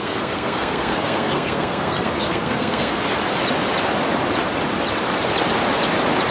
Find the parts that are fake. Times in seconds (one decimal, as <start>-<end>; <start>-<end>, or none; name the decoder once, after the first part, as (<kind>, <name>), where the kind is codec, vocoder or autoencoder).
0.0-3.0 (codec, SNAC)